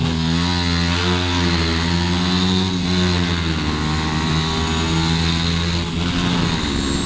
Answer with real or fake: real